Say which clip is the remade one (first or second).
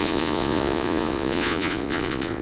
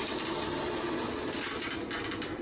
first